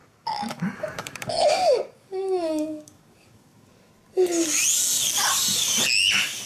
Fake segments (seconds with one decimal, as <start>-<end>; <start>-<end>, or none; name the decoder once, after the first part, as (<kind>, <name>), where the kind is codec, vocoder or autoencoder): 0.0-3.9 (codec, DAC)

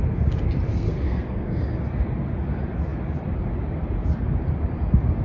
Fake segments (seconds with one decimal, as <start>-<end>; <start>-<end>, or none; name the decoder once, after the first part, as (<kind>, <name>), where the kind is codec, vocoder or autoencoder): 0.7-1.6 (codec, SNAC)

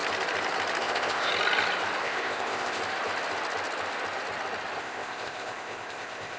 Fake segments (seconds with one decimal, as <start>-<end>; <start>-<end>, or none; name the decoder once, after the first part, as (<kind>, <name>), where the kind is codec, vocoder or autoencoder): 0.8-1.3 (codec, ZipCodec); 2.0-2.8; 4.8-6.4